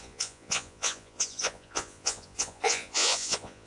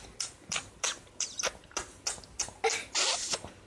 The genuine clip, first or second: second